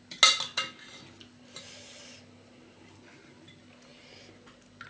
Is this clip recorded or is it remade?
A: recorded